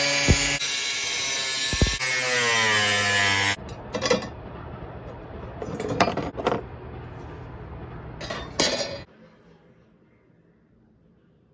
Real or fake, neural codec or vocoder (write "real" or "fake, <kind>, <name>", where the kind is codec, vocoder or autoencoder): real